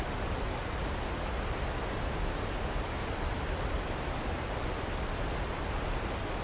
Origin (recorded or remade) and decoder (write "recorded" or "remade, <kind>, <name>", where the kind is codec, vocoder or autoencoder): recorded